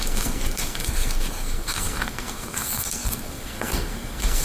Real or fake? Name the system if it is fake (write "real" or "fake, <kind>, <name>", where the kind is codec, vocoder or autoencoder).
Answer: fake, codec, SNAC